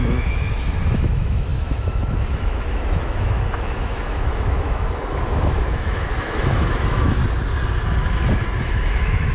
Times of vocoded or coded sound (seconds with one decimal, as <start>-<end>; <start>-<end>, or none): 0.0-7.2; 8.6-9.3